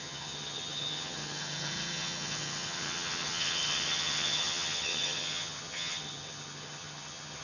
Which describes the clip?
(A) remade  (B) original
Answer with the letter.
A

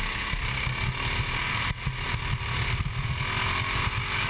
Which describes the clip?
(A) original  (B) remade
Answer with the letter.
A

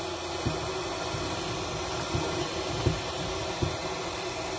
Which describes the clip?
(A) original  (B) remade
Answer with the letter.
A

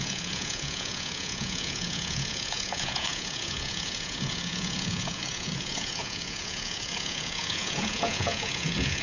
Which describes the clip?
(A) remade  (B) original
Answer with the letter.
A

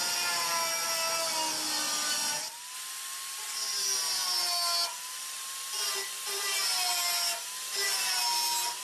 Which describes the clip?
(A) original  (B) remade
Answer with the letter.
A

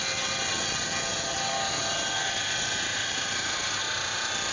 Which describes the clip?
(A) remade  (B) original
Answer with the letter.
B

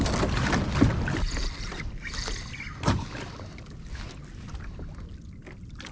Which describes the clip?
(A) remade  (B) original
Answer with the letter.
B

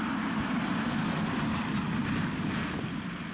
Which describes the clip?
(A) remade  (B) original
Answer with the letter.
B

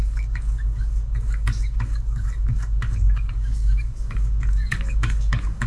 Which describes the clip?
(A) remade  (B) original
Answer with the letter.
A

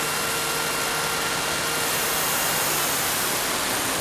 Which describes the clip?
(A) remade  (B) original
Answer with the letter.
B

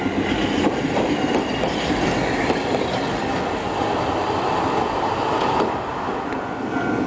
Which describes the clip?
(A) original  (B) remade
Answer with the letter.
A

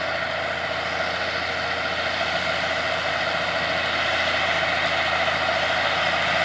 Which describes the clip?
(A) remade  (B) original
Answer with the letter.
B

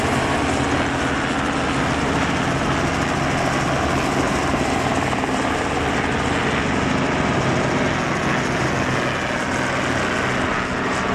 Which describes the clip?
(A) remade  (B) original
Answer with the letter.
B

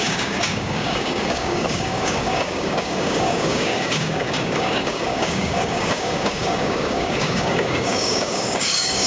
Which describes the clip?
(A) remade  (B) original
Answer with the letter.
A